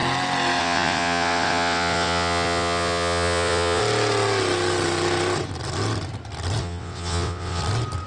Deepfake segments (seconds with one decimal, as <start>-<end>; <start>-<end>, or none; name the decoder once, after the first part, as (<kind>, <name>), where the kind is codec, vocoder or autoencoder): 0.6-3.8 (vocoder, WaveNeXt); 6.6-7.6